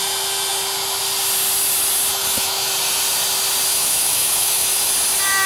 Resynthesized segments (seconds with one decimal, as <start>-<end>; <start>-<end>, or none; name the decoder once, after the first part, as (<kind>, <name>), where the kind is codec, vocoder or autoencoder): 2.2-2.7 (autoencoder, DAC-VAE); 3.7-4.9